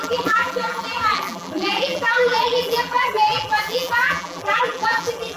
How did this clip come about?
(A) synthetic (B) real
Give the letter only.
A